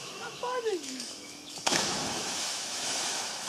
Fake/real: fake